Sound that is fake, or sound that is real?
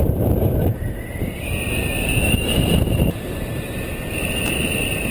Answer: fake